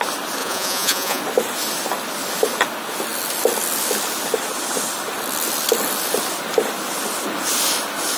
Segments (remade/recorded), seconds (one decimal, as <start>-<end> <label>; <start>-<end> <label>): 0.0-0.4 recorded; 0.4-1.2 remade; 1.2-8.2 recorded